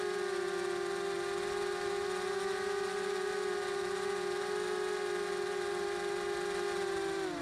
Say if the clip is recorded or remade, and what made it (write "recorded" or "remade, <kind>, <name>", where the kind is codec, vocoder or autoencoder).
recorded